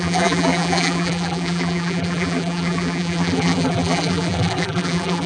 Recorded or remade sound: remade